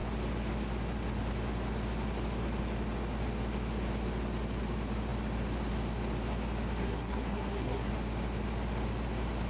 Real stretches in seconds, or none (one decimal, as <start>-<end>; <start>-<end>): 0.0-6.8; 7.9-9.5